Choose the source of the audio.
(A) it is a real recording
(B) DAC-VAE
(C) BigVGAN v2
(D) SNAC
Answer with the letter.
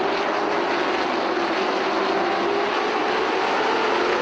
A